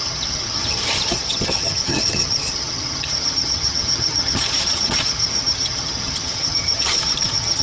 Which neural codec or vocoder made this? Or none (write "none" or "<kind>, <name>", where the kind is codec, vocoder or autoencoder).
vocoder, HiFi-GAN